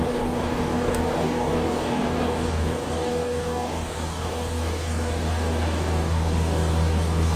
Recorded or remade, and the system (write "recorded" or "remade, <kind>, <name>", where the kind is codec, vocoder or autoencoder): remade, codec, DAC